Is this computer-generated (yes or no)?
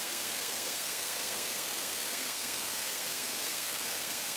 yes